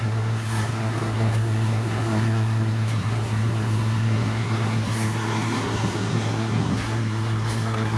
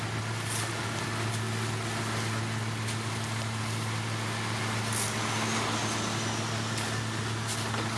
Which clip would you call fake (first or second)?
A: first